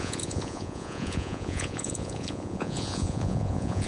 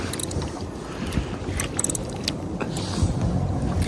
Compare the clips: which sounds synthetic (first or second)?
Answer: first